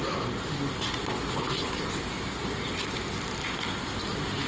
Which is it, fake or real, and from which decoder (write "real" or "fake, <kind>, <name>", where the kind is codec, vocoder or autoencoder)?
real